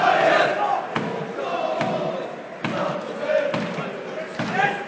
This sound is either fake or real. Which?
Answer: real